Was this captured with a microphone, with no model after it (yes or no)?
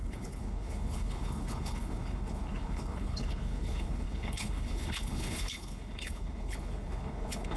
no